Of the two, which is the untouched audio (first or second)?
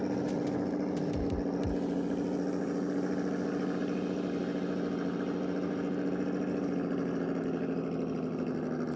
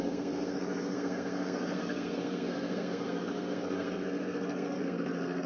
first